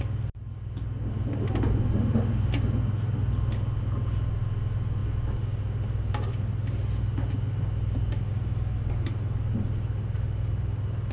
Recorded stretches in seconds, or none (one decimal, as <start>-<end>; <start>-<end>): 0.0-11.1